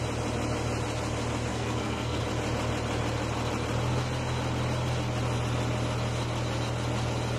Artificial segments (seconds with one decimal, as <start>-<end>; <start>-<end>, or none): 1.5-2.2